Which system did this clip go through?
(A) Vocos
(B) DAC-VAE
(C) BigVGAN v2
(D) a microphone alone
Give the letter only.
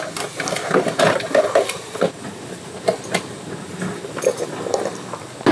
D